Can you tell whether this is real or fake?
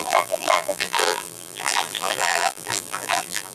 fake